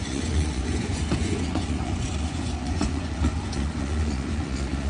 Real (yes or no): no